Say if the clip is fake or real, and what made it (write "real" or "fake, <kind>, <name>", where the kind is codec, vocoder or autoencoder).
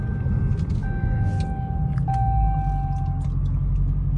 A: real